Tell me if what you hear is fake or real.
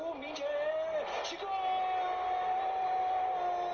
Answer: real